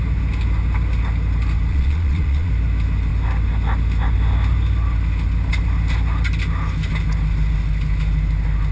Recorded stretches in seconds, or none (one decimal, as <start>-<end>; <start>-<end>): 0.0-1.7; 2.5-8.7